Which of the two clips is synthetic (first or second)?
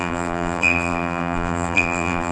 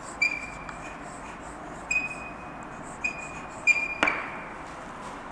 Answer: first